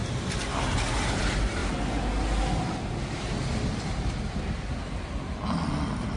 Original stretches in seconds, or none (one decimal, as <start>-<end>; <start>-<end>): 0.0-6.2